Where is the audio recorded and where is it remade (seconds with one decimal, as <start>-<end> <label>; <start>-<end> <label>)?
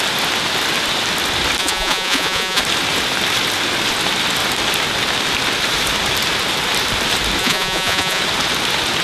0.0-1.6 recorded; 1.6-2.6 remade; 2.6-7.4 recorded; 7.4-8.2 remade; 8.2-9.0 recorded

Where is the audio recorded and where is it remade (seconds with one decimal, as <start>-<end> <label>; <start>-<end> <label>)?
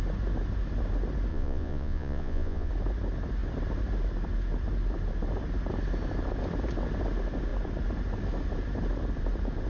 0.0-1.3 recorded; 1.3-2.7 remade; 2.7-9.7 recorded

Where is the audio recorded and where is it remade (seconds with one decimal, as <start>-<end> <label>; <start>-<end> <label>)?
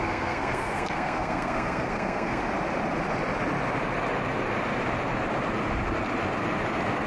0.0-2.4 remade; 2.4-7.1 recorded